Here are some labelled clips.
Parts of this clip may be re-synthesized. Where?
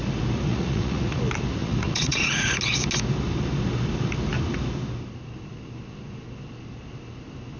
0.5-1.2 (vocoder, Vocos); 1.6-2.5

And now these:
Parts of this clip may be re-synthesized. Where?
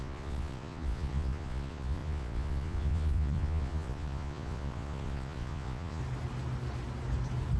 0.0-6.0 (vocoder, Vocos)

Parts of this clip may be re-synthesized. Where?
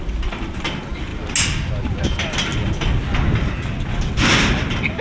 none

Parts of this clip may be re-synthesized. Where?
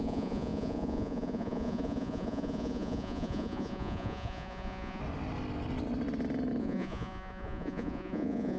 0.0-5.0 (vocoder, Vocos); 6.6-8.6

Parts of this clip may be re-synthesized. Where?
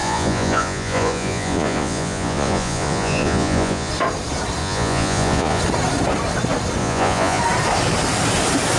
0.0-3.9 (vocoder, Vocos); 4.6-5.6; 6.8-7.4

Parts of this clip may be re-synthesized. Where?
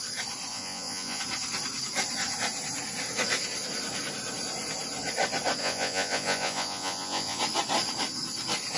0.5-1.2 (vocoder, Vocos); 5.6-7.4